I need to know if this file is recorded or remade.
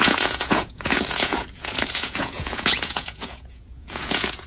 remade